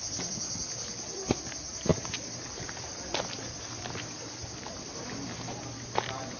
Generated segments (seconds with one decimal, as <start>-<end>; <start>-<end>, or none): 1.9-3.0